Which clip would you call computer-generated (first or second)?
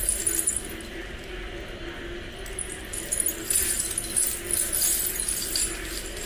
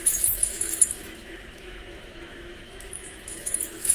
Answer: second